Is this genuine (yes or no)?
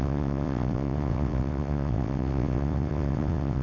no